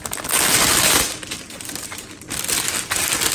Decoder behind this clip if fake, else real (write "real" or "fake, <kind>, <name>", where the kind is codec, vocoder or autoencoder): real